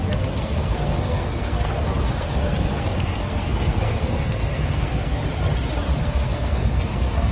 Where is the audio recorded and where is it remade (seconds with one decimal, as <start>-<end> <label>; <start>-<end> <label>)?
0.0-5.2 remade; 5.2-6.0 recorded; 6.0-7.3 remade